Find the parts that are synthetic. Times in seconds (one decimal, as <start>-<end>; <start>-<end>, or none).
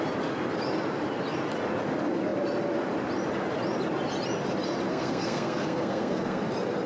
4.9-6.4